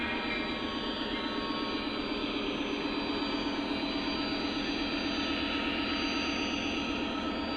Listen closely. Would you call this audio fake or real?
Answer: real